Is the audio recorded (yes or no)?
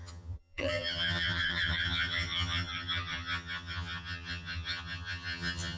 no